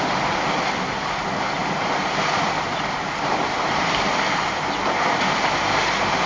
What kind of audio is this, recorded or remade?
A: recorded